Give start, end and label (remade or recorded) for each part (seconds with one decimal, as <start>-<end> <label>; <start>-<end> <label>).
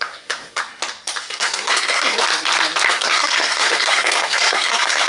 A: 0.0-0.6 remade; 0.6-1.2 recorded; 1.2-2.2 remade; 2.2-2.9 recorded; 2.9-5.1 remade